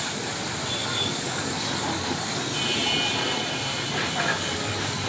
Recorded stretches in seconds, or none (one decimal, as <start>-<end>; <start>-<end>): 0.0-0.8; 2.4-4.3